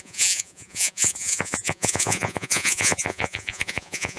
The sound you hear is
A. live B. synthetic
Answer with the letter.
B